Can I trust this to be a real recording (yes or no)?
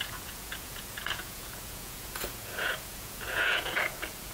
no